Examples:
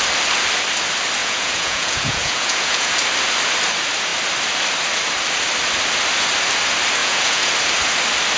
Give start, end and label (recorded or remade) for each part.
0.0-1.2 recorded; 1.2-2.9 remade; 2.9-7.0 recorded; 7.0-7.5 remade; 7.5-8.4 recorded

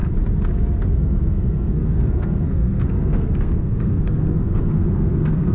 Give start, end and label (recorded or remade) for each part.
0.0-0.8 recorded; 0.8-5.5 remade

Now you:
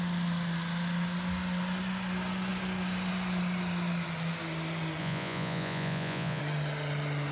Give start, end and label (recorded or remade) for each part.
0.0-5.0 recorded; 5.0-6.4 remade; 6.4-7.3 recorded

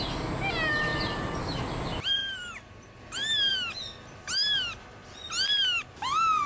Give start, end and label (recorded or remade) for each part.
0.0-0.9 recorded; 0.9-1.7 remade; 1.7-2.2 recorded; 2.2-3.0 remade; 3.0-6.5 recorded

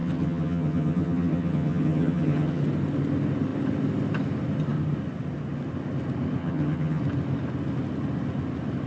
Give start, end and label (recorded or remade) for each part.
0.0-2.6 remade; 2.6-6.4 recorded; 6.4-7.0 remade; 7.0-8.9 recorded

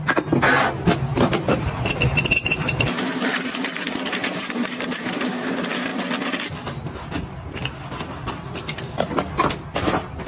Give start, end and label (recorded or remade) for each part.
0.0-1.1 recorded; 1.1-5.3 remade; 5.3-10.3 recorded